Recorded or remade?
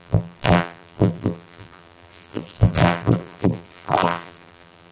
remade